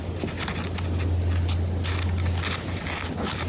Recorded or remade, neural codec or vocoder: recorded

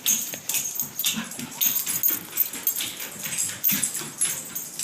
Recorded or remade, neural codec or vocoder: recorded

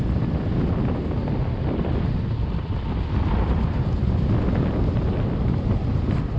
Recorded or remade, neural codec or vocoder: recorded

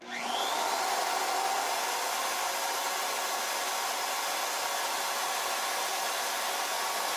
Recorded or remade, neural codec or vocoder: recorded